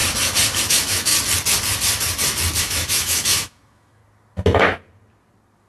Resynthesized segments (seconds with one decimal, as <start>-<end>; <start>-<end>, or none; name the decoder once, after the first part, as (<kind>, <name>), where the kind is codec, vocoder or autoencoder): 0.7-1.1 (autoencoder, DAC-VAE); 2.6-4.0